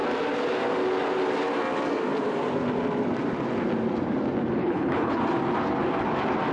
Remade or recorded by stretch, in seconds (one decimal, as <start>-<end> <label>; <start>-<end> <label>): 0.0-4.6 recorded; 4.6-5.2 remade; 5.2-6.5 recorded